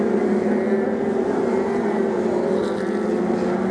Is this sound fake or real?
real